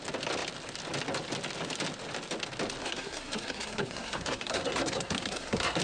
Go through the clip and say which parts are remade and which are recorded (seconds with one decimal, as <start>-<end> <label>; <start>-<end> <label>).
0.0-2.8 recorded; 2.8-5.8 remade